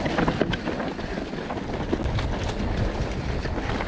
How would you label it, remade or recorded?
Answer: recorded